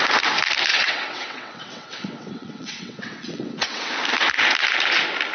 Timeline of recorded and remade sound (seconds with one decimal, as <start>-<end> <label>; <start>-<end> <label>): 0.0-0.7 recorded; 0.7-3.9 remade; 3.9-5.3 recorded